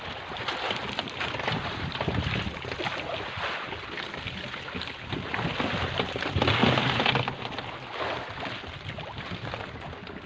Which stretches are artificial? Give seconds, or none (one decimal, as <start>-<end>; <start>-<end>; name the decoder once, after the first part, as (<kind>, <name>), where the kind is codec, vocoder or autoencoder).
none